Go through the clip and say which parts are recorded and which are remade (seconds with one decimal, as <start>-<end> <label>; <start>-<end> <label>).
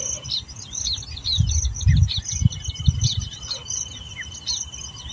0.0-5.1 recorded